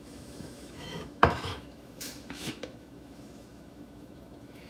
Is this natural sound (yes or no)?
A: no